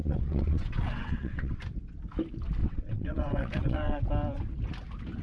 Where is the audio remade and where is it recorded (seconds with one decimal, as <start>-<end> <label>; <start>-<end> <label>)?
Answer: 0.0-1.6 remade; 1.6-2.6 recorded; 2.6-4.0 remade; 4.0-5.2 recorded